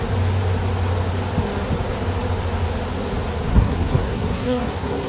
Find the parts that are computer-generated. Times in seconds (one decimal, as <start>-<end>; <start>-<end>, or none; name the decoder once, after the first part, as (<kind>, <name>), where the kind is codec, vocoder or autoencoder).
3.5-5.1 (codec, SNAC)